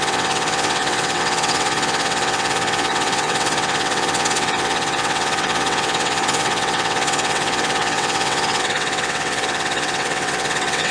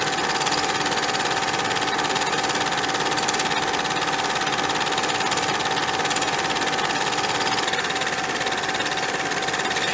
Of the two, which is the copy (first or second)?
first